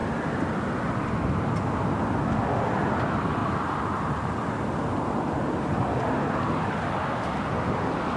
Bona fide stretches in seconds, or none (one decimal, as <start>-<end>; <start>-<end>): 0.0-8.2